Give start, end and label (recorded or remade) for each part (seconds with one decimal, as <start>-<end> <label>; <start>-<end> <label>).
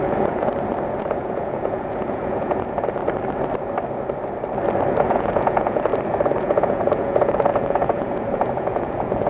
0.0-0.5 remade; 0.5-1.0 recorded; 1.0-3.0 remade; 3.0-5.0 recorded; 5.0-5.9 remade; 5.9-6.4 recorded; 6.4-9.3 remade